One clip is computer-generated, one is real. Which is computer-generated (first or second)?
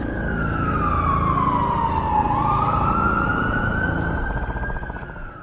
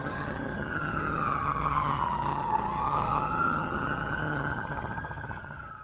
second